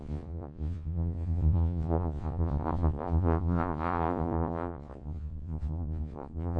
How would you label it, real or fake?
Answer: fake